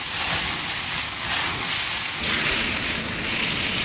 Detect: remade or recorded recorded